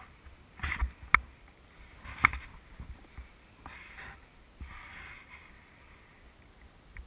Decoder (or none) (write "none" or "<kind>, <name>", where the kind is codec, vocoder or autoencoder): none